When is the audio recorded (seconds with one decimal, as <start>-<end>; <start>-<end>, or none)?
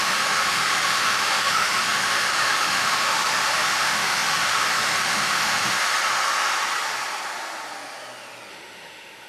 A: 5.6-8.5